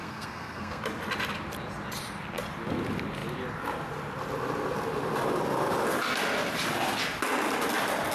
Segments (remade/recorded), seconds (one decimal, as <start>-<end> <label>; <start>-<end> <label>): 0.0-0.8 remade; 0.8-8.1 recorded